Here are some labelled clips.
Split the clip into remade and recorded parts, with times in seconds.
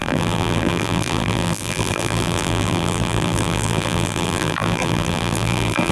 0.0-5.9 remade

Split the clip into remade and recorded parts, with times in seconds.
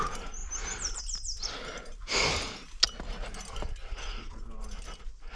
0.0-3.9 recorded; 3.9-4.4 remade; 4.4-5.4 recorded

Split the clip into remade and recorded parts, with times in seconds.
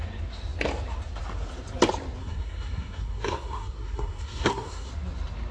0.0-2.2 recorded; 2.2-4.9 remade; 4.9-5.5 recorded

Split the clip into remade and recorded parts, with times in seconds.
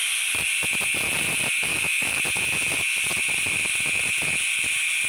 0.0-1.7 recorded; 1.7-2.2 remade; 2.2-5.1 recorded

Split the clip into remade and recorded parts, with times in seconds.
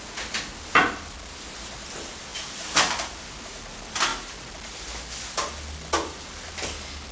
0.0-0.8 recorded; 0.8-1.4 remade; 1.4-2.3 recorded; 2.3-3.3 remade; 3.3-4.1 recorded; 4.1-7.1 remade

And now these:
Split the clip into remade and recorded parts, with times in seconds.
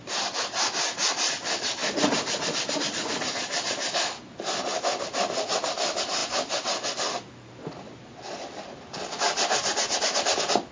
0.0-10.7 recorded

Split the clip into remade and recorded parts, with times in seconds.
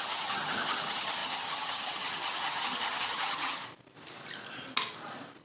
0.0-3.6 remade; 3.6-5.4 recorded